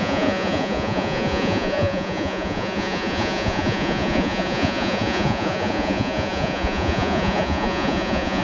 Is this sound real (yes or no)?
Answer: no